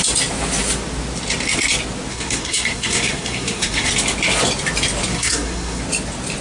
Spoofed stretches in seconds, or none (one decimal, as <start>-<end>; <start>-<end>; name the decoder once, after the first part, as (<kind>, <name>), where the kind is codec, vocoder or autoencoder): 2.1-3.9 (codec, SNAC); 5.1-5.8